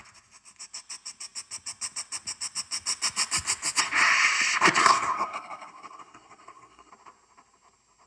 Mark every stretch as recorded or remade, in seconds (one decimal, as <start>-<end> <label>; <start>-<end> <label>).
0.0-4.8 recorded; 4.8-6.9 remade; 6.9-8.1 recorded